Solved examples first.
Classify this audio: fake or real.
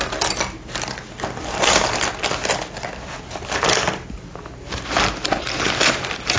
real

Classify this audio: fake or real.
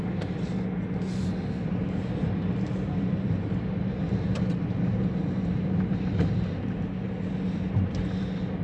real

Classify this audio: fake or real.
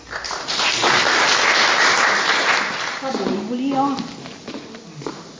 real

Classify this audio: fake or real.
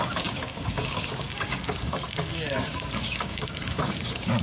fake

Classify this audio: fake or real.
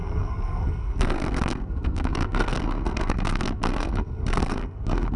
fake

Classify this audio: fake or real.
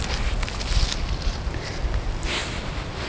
real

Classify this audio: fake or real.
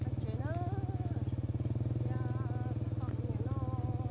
real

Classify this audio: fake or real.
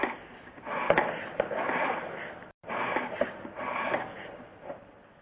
real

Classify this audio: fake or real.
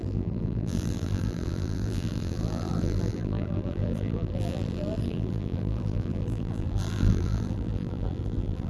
fake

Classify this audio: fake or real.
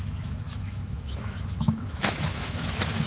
fake